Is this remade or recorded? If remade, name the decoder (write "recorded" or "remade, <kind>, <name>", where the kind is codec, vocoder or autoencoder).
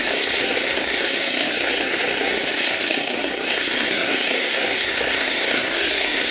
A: remade, codec, SNAC